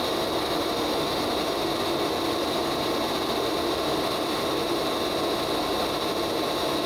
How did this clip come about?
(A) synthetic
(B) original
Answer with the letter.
B